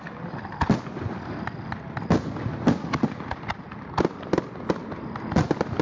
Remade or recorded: recorded